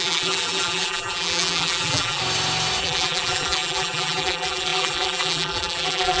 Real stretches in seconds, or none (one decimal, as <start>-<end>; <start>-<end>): 2.2-2.8